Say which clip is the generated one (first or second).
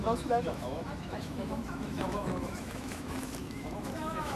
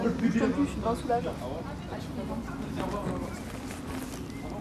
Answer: first